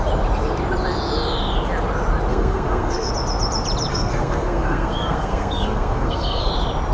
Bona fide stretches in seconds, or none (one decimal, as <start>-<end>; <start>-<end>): 0.0-2.3; 3.1-3.9; 6.5-6.9